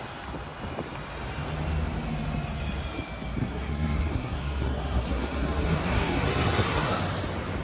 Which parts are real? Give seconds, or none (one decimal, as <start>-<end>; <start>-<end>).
0.0-3.4; 7.0-7.6